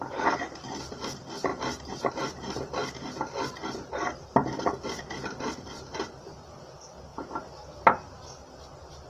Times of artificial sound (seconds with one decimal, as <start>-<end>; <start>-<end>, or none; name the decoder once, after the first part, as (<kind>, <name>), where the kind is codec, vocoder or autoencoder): 2.8-5.0 (vocoder, BigVGAN v2)